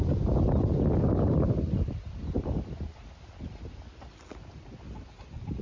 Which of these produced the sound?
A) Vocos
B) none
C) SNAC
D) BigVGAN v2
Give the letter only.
B